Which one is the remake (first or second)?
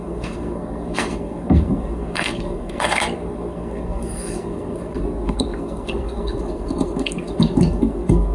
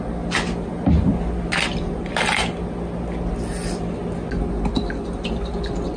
first